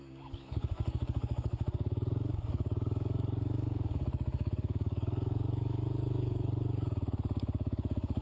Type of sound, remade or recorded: remade